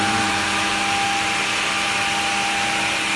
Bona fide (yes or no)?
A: yes